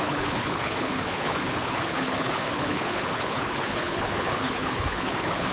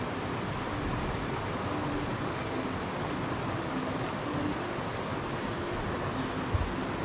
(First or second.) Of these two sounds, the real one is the second